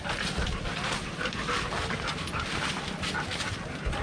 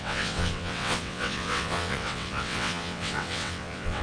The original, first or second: first